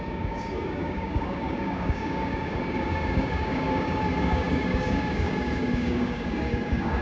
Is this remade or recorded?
remade